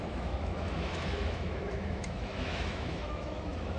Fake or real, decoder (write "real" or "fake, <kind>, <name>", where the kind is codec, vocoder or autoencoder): fake, autoencoder, DAC-VAE